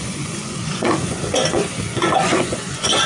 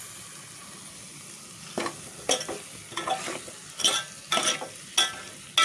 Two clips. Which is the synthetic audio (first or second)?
first